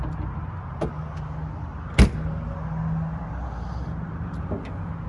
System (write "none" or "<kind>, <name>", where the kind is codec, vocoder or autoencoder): none